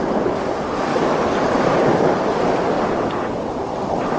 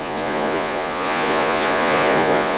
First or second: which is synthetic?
second